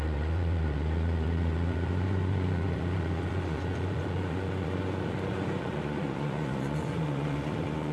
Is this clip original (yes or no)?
no